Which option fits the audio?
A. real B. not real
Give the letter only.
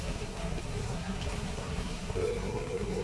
B